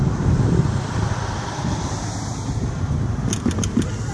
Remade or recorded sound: recorded